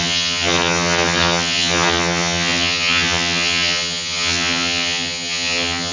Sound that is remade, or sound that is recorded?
remade